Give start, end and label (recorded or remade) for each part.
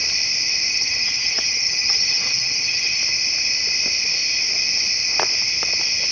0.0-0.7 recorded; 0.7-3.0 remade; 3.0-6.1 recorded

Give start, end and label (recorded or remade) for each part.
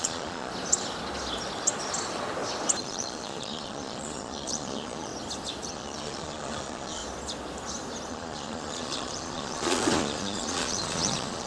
0.0-0.5 remade; 0.5-2.8 recorded; 2.8-5.1 remade; 5.1-5.7 recorded; 5.7-7.0 remade; 7.0-8.1 recorded; 8.1-11.5 remade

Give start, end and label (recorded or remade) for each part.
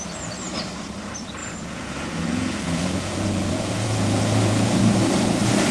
0.0-1.4 recorded; 1.4-4.8 remade; 4.8-5.7 recorded